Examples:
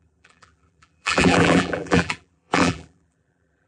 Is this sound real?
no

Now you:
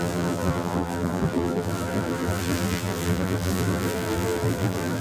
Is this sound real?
no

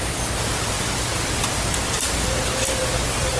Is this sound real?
no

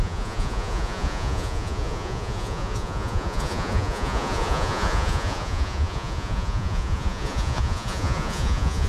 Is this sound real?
no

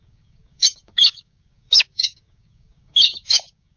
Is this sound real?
no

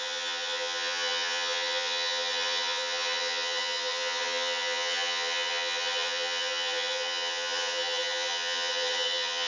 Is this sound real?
no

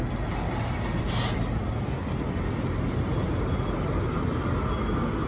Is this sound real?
yes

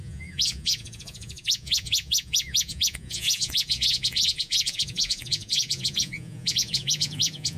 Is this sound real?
no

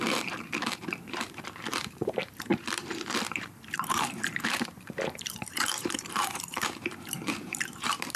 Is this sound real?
no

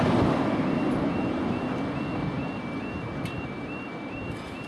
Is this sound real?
yes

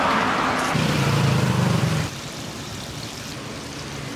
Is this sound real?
no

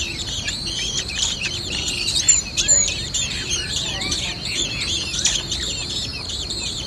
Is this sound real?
no